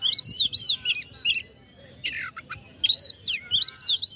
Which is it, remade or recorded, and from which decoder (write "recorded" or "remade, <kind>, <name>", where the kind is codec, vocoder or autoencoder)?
recorded